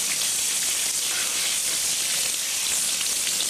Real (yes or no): yes